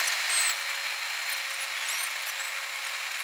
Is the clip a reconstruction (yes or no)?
no